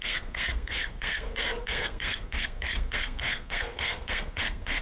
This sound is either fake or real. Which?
fake